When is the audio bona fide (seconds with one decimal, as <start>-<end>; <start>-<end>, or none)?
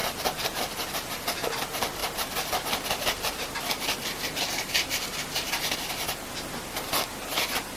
0.6-2.0; 3.6-7.8